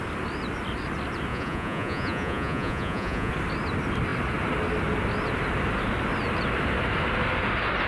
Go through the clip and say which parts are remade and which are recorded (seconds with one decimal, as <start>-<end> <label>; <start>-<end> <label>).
0.0-1.3 recorded; 1.3-3.3 remade; 3.3-7.9 recorded